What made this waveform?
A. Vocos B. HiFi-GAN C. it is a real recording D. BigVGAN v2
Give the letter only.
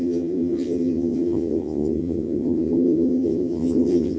B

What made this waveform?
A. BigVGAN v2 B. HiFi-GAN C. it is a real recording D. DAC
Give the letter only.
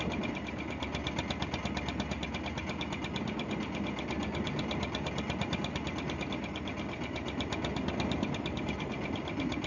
C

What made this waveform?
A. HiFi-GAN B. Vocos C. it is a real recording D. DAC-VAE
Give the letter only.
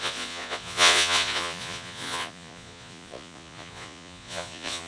B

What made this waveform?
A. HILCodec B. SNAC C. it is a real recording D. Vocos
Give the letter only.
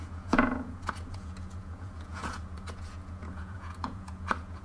D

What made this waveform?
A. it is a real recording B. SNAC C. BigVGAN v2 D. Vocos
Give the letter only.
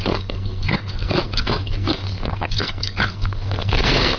B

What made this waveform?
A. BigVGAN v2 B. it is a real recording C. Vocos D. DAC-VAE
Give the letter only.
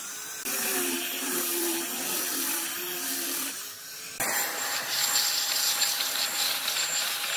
A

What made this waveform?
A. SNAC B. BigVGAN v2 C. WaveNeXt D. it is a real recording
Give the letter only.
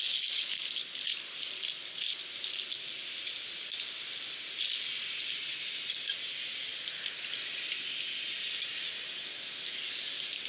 D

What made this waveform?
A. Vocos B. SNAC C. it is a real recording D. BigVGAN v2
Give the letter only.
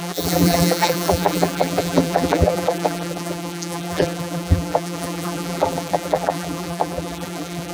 D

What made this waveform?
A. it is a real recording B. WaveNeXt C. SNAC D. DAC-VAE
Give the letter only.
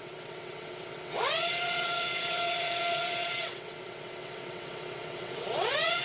B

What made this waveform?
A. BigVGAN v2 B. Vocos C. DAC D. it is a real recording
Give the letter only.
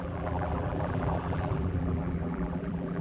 A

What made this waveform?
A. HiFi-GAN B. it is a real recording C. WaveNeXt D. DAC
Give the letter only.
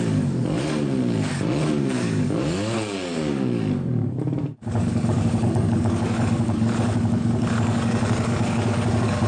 D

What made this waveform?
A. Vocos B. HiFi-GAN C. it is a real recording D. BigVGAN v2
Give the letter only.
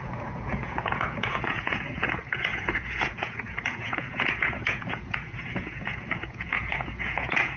A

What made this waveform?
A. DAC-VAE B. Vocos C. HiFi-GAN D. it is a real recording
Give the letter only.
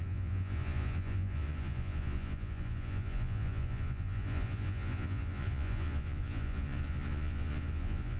B